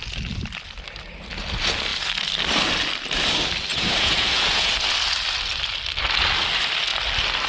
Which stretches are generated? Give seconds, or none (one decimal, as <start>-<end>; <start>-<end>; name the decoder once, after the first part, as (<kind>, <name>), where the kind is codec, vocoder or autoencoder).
3.7-4.7 (vocoder, Vocos)